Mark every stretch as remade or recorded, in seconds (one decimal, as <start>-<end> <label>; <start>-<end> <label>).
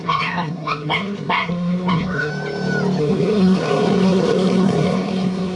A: 0.0-2.3 remade; 2.3-3.0 recorded; 3.0-5.6 remade